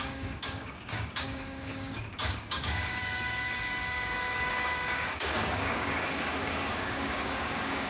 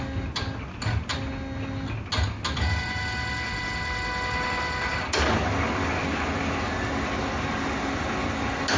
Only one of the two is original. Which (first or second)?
second